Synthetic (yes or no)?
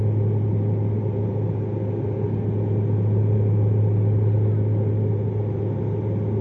no